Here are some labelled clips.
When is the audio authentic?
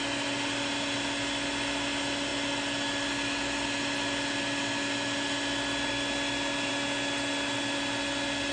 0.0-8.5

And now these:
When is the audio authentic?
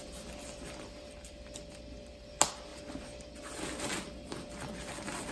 0.0-5.3